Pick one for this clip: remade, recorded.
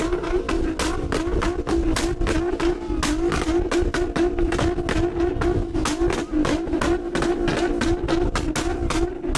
recorded